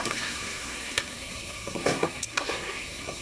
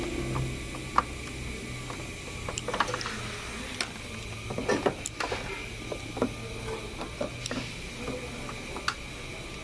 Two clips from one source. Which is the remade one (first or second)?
first